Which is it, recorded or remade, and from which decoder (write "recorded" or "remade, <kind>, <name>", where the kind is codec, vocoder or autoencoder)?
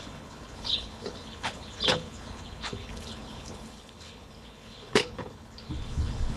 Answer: remade, codec, HILCodec